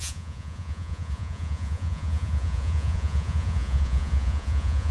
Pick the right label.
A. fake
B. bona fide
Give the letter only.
A